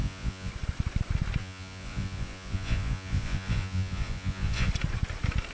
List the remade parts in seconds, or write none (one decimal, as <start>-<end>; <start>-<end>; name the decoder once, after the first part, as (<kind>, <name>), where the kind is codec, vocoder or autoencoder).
0.0-0.5 (vocoder, Vocos); 1.4-4.7